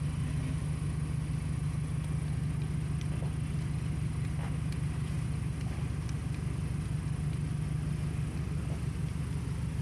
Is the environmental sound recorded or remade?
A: recorded